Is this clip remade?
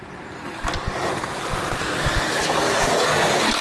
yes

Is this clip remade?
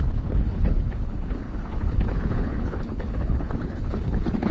yes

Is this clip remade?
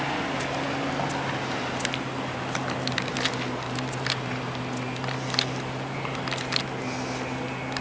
no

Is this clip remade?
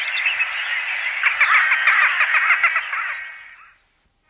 no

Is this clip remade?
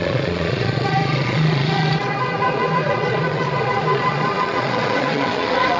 yes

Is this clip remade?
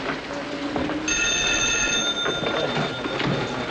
no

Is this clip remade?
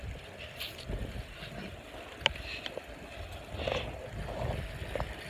no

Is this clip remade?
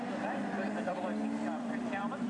yes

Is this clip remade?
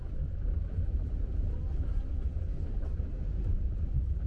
no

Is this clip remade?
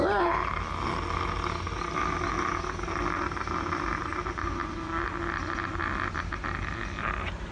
no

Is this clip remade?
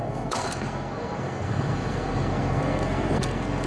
yes